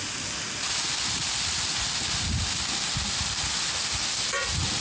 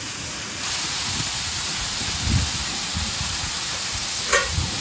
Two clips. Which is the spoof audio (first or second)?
second